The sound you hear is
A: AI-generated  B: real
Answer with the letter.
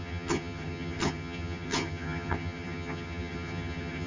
A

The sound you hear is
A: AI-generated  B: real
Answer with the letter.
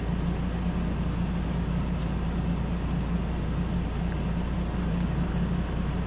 B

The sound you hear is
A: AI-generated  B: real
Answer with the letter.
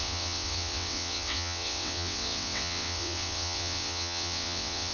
A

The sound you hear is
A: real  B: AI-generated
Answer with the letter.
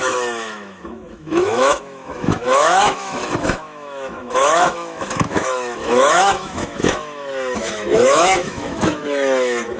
B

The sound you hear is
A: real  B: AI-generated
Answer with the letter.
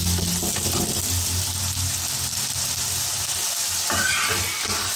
A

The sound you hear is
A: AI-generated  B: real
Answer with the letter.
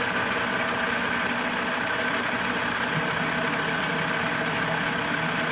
B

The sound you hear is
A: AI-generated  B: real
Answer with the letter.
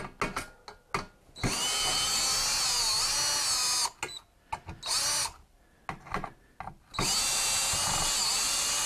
B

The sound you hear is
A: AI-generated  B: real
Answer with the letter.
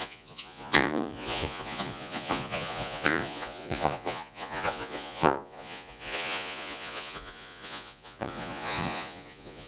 A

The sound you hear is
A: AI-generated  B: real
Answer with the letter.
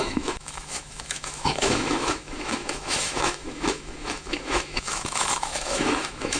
A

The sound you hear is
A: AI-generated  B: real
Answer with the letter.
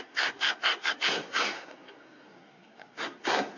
A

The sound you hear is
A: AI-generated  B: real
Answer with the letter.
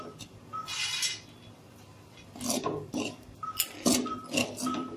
B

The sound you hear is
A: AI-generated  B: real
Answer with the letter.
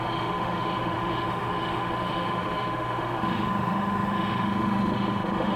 A